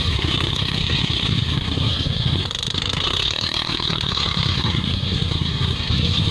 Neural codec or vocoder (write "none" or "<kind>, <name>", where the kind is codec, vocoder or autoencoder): codec, SNAC